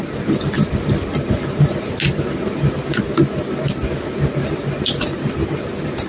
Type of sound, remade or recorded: recorded